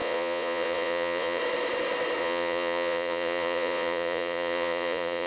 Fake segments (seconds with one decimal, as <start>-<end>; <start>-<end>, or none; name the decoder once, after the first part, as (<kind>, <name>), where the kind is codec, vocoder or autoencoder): 0.0-1.4 (vocoder, Vocos); 2.2-5.3